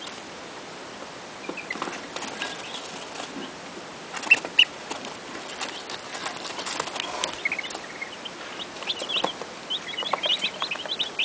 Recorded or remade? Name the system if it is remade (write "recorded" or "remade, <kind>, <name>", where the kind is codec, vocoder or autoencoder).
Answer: recorded